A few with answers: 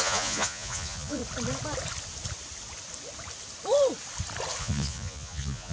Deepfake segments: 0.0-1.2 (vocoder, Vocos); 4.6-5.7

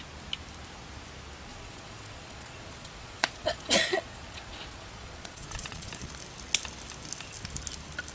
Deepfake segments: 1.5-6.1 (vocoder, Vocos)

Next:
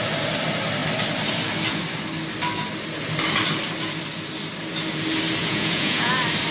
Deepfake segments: 5.4-6.1 (vocoder, Vocos)

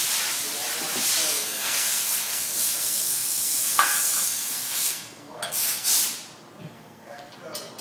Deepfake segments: 1.2-5.9 (codec, SNAC); 6.6-7.3